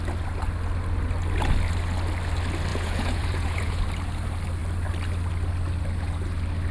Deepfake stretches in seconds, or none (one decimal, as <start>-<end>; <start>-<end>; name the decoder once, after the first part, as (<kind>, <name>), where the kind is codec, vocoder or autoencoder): 2.7-3.8 (vocoder, Vocos)